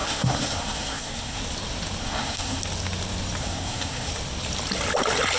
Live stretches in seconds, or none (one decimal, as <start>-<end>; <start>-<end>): 1.4-2.0; 2.6-3.4; 4.1-5.4